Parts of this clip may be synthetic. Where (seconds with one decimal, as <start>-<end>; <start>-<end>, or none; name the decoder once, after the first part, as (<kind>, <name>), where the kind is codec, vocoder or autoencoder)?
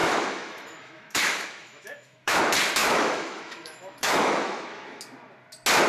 0.0-2.4 (autoencoder, DAC-VAE); 2.8-5.0